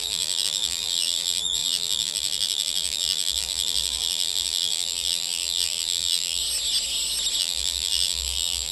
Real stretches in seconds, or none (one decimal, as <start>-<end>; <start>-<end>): 6.4-7.4